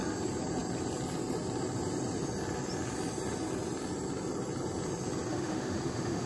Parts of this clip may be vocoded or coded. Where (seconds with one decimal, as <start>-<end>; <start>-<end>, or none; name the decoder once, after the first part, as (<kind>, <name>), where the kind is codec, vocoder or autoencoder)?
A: 5.3-6.3 (autoencoder, DAC-VAE)